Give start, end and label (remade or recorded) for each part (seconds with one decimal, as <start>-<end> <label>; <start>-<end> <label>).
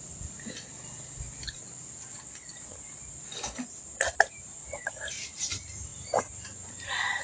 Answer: 0.0-2.1 recorded; 2.1-3.0 remade; 3.0-4.6 recorded; 4.6-5.1 remade; 5.1-7.2 recorded